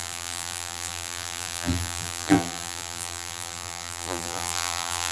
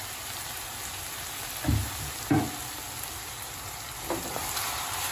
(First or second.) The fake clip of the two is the first